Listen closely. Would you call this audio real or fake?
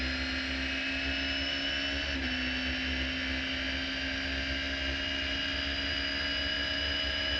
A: real